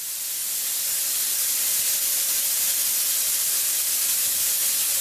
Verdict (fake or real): real